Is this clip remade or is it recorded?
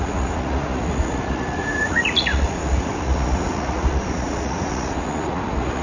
remade